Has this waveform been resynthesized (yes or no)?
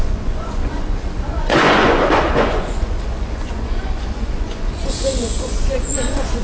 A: yes